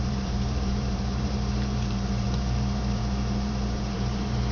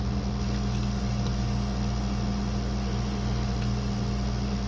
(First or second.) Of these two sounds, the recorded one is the second